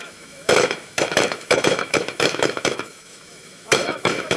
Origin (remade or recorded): remade